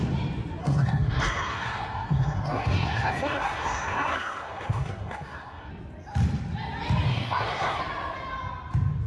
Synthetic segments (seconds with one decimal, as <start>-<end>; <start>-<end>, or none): 0.6-5.7; 7.1-7.8